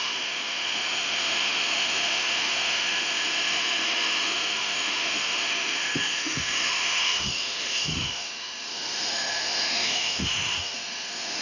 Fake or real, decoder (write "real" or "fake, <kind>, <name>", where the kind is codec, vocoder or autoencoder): fake, autoencoder, DAC-VAE